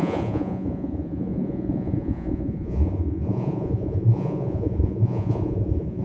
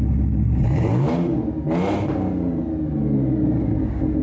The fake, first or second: first